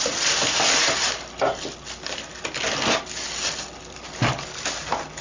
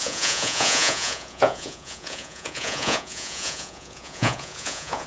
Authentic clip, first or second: first